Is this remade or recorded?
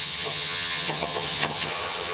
remade